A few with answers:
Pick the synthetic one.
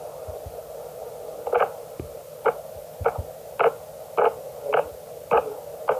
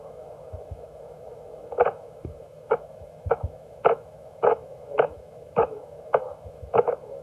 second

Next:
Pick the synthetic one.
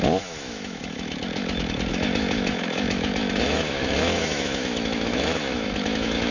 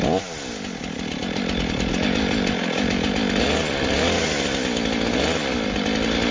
first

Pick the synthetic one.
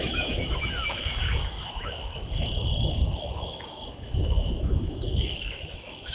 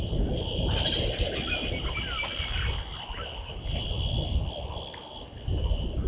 first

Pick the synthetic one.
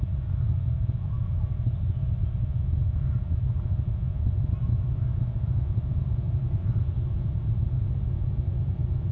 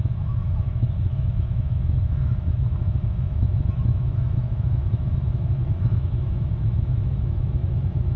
second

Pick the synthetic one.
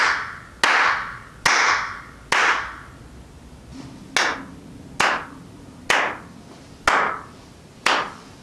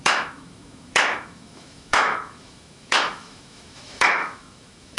second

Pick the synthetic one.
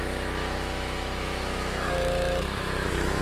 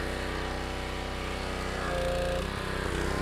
first